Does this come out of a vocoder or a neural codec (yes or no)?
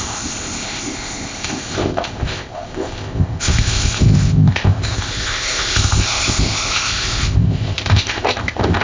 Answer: yes